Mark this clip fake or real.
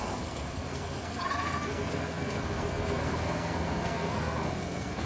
fake